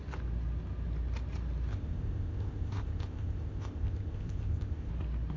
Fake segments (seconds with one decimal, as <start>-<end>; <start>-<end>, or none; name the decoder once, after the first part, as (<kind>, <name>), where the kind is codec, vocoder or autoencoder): 1.7-4.9 (codec, ZipCodec)